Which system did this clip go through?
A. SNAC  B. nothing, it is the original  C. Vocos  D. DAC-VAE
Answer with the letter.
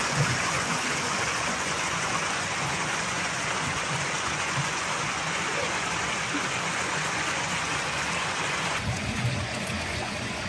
C